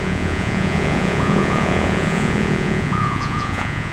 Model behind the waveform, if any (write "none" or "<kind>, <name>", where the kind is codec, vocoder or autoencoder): vocoder, Vocos